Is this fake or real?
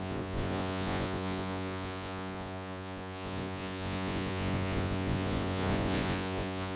fake